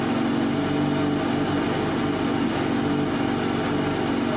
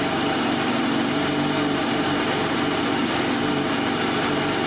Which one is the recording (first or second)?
first